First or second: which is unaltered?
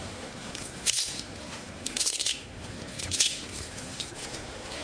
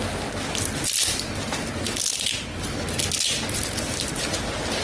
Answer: second